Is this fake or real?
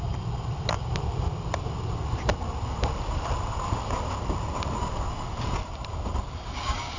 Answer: fake